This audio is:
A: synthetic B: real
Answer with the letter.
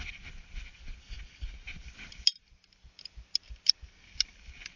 B